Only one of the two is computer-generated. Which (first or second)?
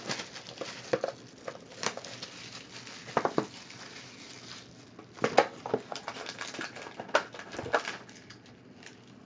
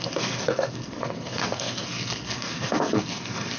second